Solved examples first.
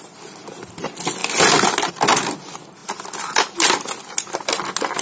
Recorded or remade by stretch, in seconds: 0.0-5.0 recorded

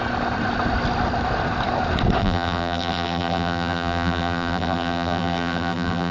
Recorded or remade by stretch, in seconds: 0.0-2.2 recorded; 2.2-6.1 remade

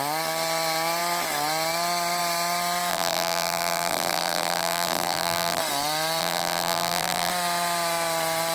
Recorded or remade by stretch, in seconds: 0.0-2.9 recorded; 2.9-5.6 remade; 5.6-6.2 recorded; 6.2-7.3 remade; 7.3-8.5 recorded

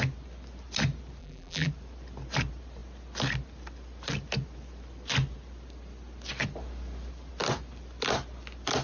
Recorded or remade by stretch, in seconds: 0.0-1.2 recorded; 1.2-1.7 remade; 1.7-8.8 recorded